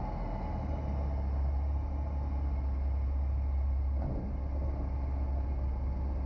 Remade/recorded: recorded